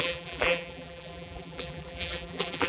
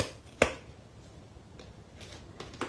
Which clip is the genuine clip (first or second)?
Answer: second